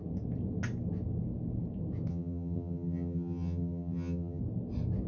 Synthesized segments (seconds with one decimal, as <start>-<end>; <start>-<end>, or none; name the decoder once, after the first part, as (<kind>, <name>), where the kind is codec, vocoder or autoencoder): 2.1-4.4 (vocoder, HiFi-GAN)